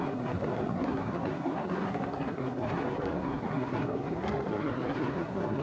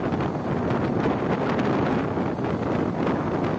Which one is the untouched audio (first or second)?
second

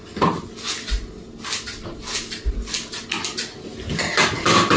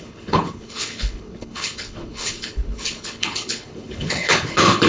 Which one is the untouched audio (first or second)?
first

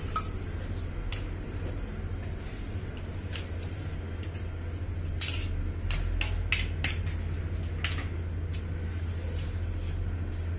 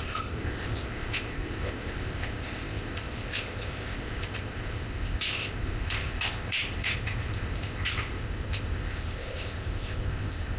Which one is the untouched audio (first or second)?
first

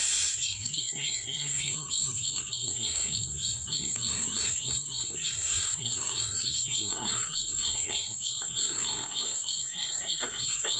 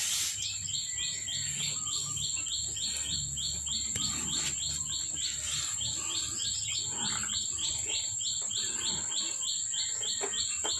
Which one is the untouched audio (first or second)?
second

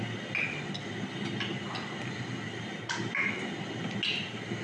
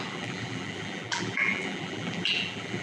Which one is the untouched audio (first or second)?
first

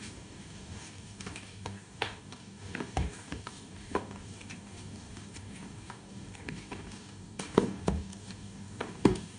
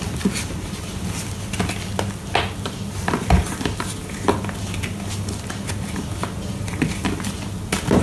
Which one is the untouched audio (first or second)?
second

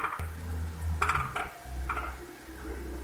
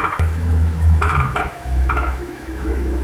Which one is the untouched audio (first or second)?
first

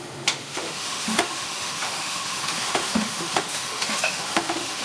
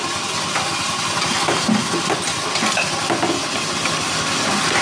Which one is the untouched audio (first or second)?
second